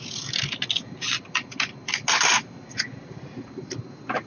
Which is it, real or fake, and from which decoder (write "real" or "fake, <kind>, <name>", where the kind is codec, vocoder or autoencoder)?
real